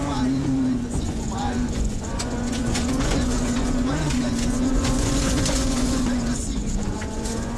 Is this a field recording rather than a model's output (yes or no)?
no